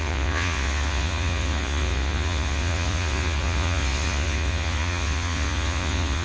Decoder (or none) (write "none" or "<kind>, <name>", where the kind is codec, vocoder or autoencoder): vocoder, Vocos